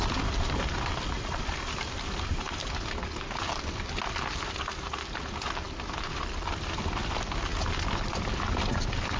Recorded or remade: recorded